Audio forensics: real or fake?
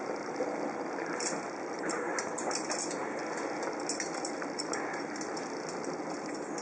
real